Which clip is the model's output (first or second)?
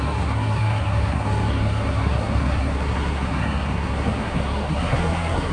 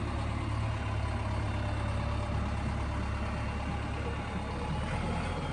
first